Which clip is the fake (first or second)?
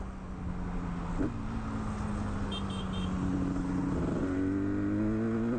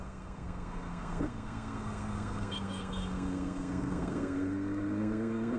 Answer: second